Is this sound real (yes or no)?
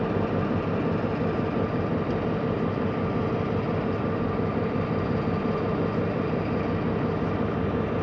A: no